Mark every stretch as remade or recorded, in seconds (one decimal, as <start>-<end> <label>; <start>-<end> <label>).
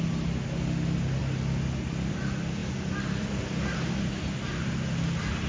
0.0-2.6 recorded; 2.6-3.4 remade; 3.4-5.5 recorded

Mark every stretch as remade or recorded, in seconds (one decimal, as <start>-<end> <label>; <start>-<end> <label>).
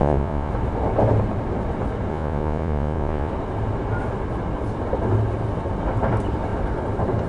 0.0-0.5 remade; 0.5-2.1 recorded; 2.1-3.3 remade; 3.3-7.3 recorded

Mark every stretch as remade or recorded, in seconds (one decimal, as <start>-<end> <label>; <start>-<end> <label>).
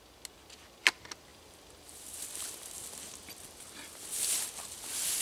0.0-5.2 recorded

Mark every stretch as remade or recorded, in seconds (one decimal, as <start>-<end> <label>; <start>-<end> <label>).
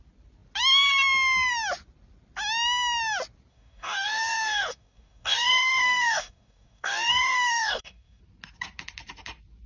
0.0-3.5 recorded; 3.5-8.2 remade; 8.2-9.7 recorded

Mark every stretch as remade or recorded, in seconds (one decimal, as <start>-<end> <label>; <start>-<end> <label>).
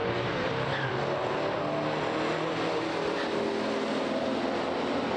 0.0-5.2 recorded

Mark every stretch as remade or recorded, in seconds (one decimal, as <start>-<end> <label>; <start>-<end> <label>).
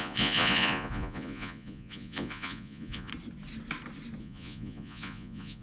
0.0-3.1 remade; 3.1-4.2 recorded; 4.2-5.6 remade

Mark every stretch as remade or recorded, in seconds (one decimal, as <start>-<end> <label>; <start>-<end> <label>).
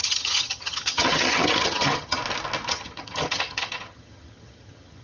0.0-2.2 remade; 2.2-2.7 recorded; 2.7-5.0 remade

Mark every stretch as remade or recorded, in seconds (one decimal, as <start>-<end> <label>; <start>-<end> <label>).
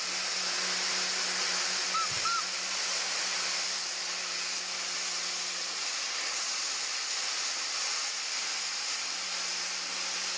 0.0-10.4 recorded